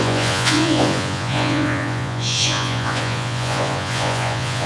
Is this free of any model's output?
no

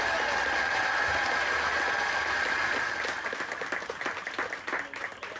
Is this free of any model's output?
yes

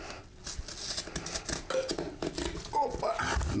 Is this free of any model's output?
yes